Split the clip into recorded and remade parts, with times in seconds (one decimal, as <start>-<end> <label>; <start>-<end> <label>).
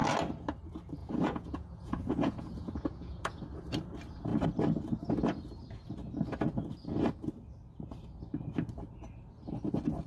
0.0-1.0 recorded; 1.0-3.4 remade; 3.4-10.1 recorded